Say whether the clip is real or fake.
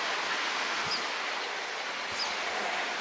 real